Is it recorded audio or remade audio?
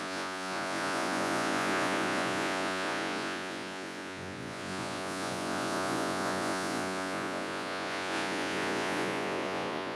remade